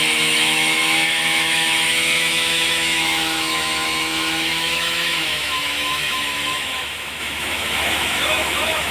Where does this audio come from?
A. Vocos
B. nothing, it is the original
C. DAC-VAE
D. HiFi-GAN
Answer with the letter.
C